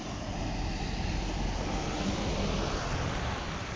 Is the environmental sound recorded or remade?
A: recorded